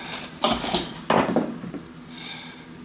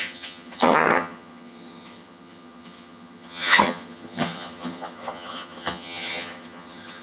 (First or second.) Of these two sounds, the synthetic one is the second